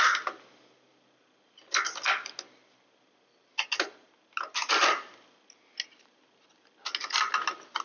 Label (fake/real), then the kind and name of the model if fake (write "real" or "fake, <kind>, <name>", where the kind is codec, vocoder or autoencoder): real